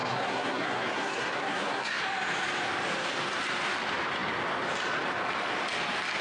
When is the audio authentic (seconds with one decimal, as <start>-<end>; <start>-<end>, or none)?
2.0-6.2